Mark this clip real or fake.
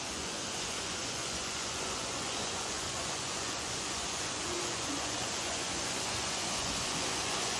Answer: fake